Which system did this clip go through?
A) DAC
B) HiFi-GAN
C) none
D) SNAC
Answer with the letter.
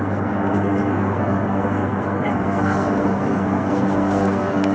D